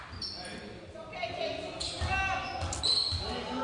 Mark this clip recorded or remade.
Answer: recorded